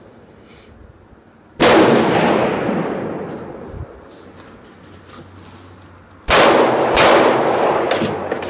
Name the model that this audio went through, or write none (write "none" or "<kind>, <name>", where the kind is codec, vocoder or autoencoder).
none